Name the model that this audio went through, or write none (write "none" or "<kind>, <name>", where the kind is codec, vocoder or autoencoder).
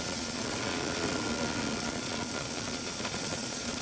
vocoder, Vocos